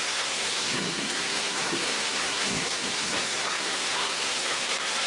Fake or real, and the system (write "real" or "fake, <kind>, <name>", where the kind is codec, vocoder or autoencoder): fake, codec, SNAC